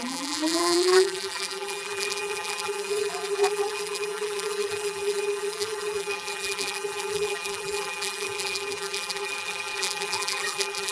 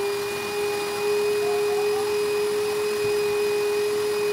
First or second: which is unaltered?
second